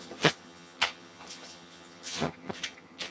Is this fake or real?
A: fake